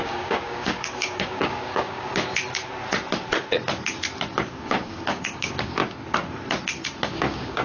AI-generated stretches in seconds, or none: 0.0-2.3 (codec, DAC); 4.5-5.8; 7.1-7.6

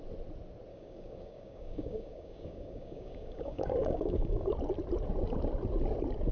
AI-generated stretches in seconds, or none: 0.7-4.5 (codec, DAC)